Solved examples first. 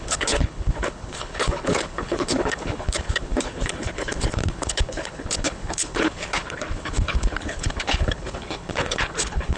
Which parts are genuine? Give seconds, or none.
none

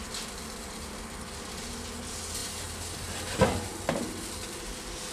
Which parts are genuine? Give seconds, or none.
0.0-5.1

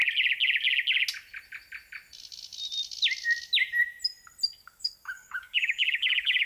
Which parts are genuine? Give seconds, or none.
0.0-4.6

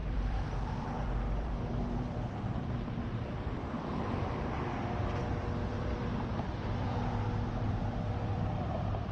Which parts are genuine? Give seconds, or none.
6.9-7.6

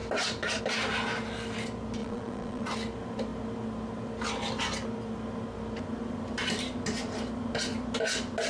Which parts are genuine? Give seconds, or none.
0.0-2.0; 2.7-8.5

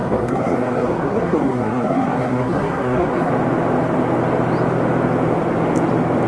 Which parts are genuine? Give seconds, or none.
3.3-6.3

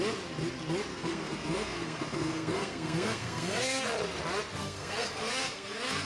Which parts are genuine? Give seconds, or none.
0.0-0.9; 3.8-4.6